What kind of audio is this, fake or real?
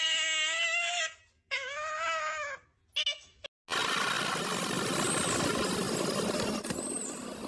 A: real